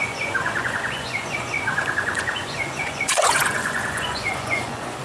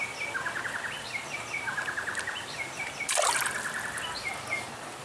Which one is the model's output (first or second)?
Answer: first